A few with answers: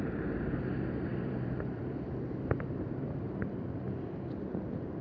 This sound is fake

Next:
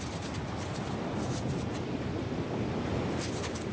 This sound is real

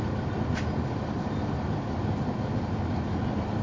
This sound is real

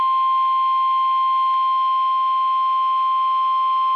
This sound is real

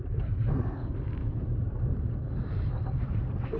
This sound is fake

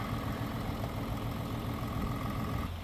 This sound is real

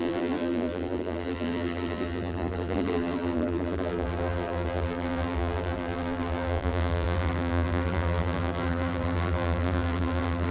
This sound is fake